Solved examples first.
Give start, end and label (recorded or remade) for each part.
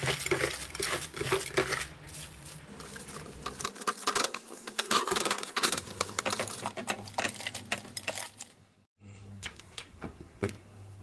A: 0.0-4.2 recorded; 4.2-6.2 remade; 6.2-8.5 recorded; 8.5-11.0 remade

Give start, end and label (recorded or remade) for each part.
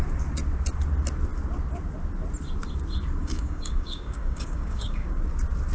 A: 0.0-3.2 recorded; 3.2-5.1 remade; 5.1-5.7 recorded